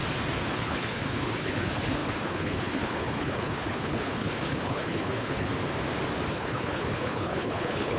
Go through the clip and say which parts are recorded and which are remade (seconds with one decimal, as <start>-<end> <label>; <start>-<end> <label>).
0.0-0.5 recorded; 0.5-5.5 remade; 5.5-6.3 recorded; 6.3-8.0 remade